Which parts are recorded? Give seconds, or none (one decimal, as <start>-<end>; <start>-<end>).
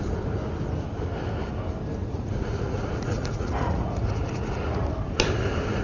0.0-2.0; 4.8-5.8